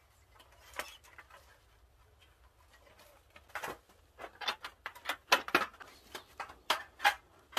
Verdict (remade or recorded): recorded